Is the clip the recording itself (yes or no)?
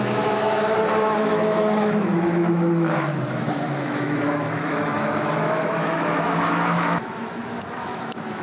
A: no